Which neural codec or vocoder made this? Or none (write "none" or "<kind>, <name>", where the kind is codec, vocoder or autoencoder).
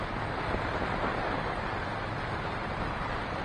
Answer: vocoder, BigVGAN v2